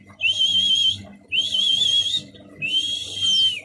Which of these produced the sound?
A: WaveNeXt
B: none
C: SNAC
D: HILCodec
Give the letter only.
B